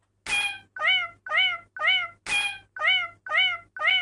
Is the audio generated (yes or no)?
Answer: no